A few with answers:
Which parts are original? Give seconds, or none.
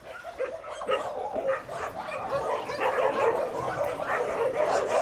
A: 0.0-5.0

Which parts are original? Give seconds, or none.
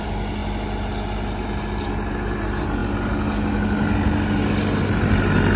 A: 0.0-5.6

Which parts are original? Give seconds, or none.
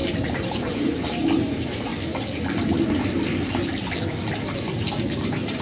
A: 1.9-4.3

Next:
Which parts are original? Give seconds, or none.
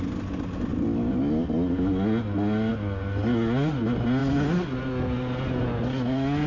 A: 0.0-6.5